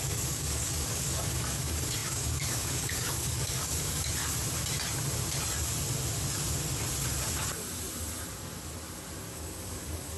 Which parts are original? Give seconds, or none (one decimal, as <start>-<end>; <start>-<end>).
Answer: 4.2-9.3